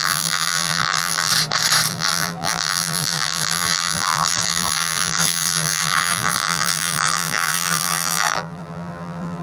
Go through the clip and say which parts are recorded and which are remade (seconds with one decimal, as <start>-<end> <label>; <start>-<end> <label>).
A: 0.0-1.3 remade; 1.3-1.9 recorded; 1.9-9.4 remade